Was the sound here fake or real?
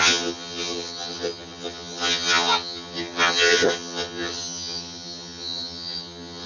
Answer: fake